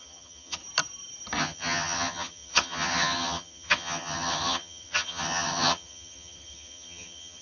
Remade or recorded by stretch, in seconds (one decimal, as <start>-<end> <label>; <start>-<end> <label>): 0.0-0.6 remade; 0.6-1.4 recorded; 1.4-7.4 remade